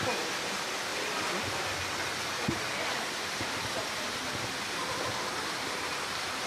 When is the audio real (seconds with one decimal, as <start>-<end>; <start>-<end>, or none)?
0.0-0.9; 1.8-3.8; 4.4-6.5